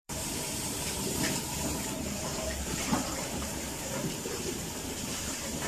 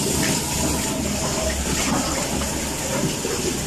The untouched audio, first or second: second